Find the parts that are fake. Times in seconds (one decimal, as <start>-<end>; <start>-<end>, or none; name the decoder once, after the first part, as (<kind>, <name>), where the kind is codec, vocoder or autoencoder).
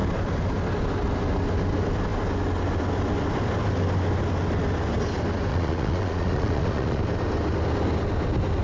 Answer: 5.5-7.0 (vocoder, Vocos)